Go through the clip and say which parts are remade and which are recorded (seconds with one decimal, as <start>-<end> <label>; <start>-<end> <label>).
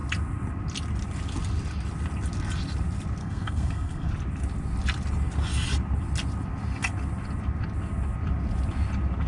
0.0-3.2 recorded; 3.2-4.1 remade; 4.1-9.3 recorded